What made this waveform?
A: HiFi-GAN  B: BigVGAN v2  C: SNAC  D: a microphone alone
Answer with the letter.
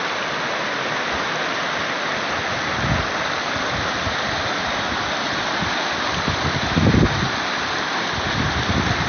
D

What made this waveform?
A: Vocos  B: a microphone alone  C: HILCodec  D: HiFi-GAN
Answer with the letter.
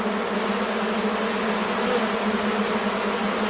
B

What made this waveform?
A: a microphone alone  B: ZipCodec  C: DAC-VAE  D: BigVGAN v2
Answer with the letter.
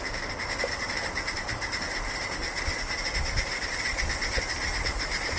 A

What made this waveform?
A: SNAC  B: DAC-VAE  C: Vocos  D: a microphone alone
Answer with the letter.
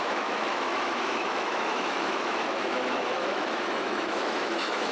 B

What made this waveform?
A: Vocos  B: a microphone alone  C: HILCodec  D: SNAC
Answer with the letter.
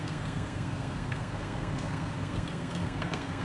D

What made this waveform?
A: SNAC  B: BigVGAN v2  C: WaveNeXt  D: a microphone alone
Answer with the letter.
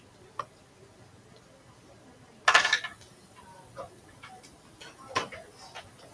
D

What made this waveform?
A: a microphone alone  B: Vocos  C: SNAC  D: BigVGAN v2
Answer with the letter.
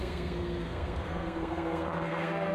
C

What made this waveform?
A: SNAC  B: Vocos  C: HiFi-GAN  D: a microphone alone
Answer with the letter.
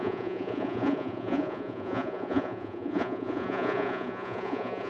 B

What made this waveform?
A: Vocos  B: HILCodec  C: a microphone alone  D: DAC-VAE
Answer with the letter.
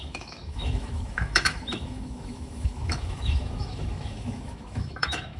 D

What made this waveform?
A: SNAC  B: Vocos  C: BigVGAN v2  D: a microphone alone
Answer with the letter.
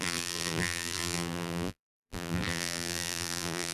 C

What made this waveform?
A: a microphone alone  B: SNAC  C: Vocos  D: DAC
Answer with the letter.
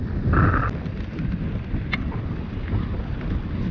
A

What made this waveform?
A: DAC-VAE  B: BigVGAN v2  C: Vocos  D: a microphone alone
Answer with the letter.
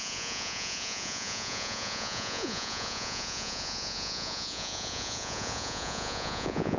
C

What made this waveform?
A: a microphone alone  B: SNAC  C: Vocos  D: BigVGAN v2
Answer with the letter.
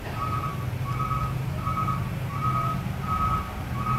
D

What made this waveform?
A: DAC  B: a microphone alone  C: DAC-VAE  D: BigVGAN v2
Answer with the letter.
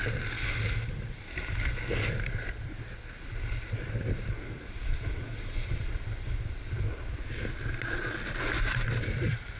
B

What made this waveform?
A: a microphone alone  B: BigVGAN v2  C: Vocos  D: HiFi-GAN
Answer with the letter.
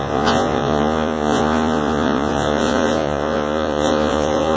C